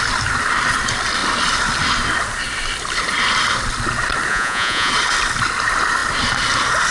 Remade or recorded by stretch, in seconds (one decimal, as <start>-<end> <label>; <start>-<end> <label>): 0.0-4.3 recorded; 4.3-4.9 remade; 4.9-6.9 recorded